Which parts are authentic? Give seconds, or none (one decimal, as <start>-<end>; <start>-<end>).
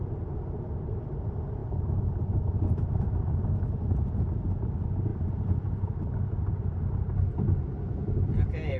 0.0-8.8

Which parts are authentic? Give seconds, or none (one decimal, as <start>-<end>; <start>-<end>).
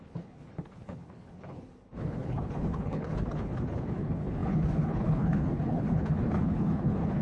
none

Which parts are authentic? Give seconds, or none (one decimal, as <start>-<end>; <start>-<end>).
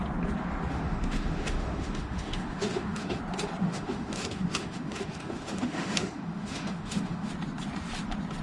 0.0-0.7; 3.2-3.6; 7.3-8.4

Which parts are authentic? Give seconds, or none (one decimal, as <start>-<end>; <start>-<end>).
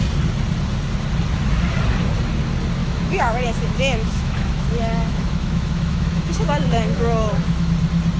0.0-2.8; 7.7-8.2